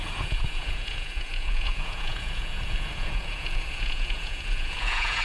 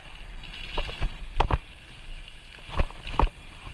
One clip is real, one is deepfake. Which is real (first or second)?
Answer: second